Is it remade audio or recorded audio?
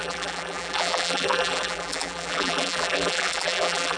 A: remade